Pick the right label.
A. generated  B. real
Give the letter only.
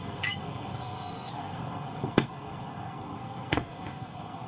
A